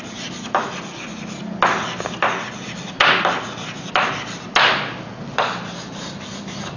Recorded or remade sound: recorded